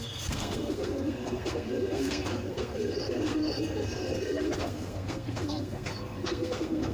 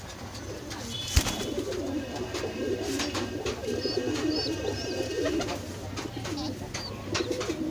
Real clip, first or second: second